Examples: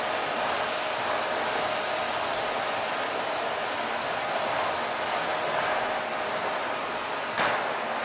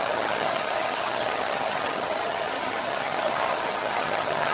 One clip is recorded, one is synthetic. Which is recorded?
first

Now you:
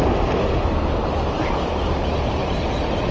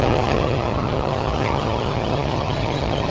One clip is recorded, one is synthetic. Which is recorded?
first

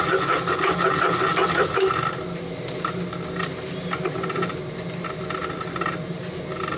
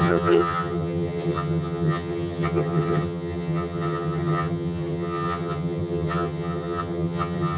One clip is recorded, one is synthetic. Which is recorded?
first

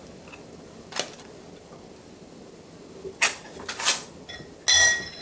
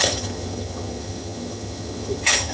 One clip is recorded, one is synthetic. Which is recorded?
first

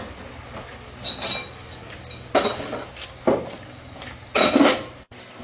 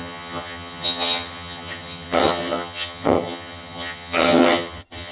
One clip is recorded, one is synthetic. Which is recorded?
first